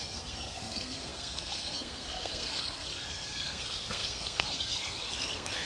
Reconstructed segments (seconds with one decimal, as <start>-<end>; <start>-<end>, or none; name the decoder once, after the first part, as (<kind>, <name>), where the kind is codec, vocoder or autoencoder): 0.0-5.7 (codec, SNAC)